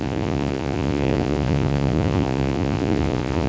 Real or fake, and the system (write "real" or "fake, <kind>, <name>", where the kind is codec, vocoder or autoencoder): fake, vocoder, Vocos